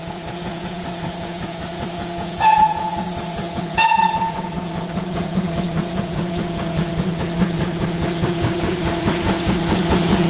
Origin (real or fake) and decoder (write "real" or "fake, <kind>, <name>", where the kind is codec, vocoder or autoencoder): fake, vocoder, Vocos